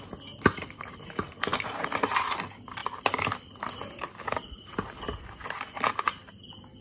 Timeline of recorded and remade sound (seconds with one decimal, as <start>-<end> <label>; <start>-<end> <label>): 0.0-6.8 recorded